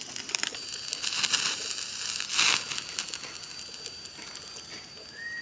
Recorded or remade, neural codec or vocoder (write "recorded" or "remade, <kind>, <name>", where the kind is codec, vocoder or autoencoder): recorded